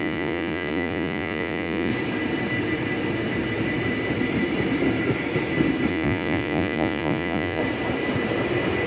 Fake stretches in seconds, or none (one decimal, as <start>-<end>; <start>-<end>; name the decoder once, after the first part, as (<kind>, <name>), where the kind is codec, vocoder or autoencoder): 0.0-1.9 (vocoder, Vocos); 5.9-7.6